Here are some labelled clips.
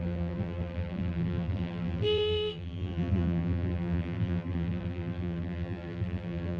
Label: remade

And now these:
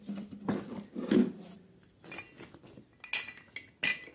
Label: recorded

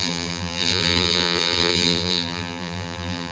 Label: remade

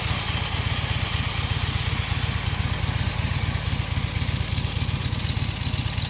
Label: recorded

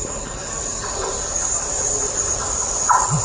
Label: recorded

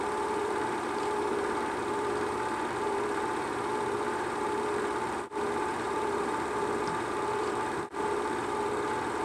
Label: remade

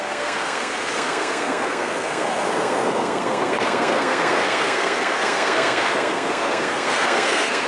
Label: remade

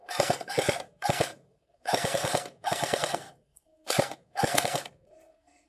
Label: remade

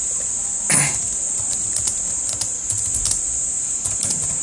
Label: recorded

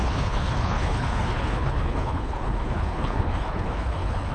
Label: remade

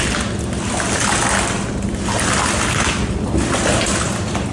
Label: recorded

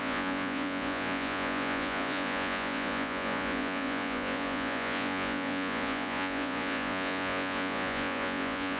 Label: remade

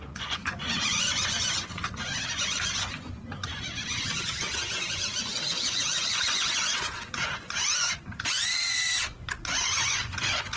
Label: remade